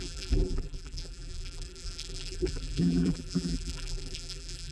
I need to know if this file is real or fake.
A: fake